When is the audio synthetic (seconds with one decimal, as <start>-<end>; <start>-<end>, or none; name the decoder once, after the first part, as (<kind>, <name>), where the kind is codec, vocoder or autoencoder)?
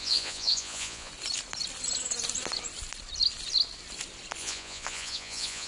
0.0-1.1 (vocoder, Vocos); 4.4-5.7